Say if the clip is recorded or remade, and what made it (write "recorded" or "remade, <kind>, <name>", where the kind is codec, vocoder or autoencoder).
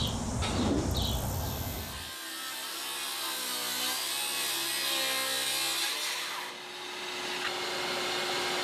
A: recorded